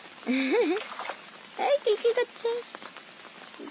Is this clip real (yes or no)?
yes